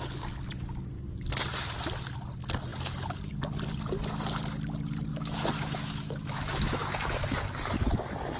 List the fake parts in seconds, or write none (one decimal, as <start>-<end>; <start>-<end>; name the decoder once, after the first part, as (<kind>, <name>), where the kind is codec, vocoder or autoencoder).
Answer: 5.1-7.4 (autoencoder, DAC-VAE)